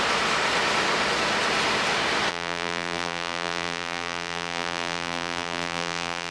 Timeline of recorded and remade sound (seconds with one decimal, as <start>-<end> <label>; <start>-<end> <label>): 0.0-2.3 recorded; 2.3-6.3 remade